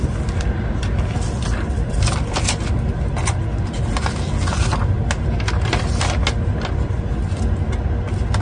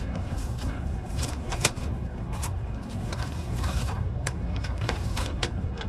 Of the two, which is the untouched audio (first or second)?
first